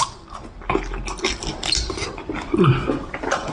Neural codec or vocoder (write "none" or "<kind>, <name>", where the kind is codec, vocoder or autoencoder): none